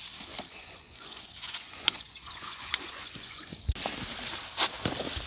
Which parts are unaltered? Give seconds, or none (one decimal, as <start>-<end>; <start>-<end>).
0.0-0.5; 3.7-5.3